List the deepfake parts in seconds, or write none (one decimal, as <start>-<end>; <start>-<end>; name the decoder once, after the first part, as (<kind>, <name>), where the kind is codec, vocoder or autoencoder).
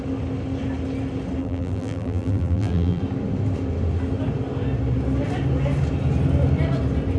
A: 1.4-3.0 (vocoder, BigVGAN v2)